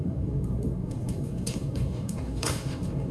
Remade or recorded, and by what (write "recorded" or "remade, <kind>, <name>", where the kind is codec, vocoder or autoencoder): remade, codec, SNAC